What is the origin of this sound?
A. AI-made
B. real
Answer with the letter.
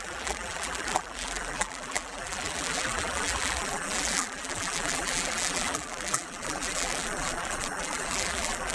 A